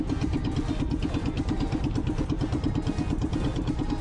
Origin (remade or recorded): recorded